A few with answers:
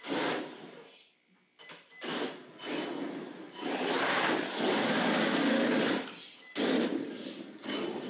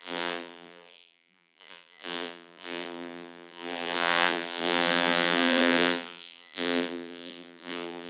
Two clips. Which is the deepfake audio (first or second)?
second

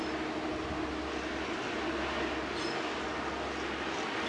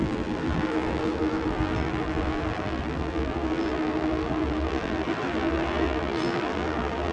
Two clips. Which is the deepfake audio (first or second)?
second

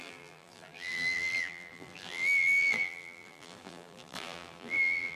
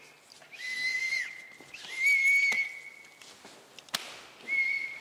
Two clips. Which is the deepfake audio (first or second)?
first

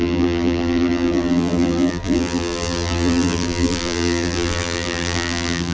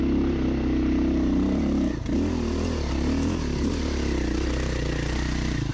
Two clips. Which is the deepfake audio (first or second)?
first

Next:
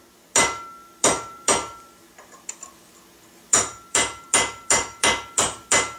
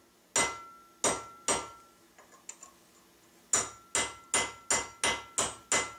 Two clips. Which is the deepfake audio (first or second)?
first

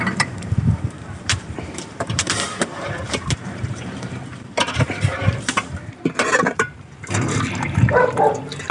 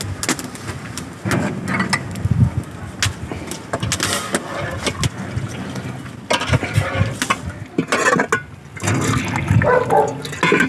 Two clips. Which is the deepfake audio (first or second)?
first